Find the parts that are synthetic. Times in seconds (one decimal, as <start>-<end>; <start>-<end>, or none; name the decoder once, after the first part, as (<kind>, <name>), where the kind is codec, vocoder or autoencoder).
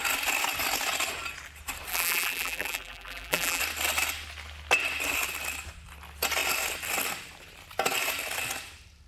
1.9-3.6 (vocoder, BigVGAN v2)